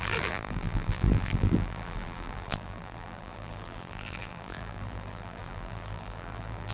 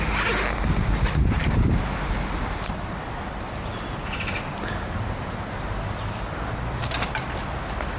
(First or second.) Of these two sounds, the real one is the second